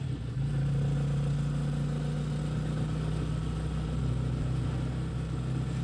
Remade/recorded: recorded